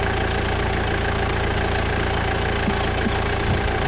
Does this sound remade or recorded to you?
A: remade